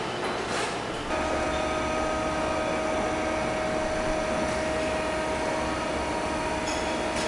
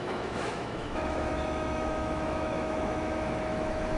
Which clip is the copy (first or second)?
second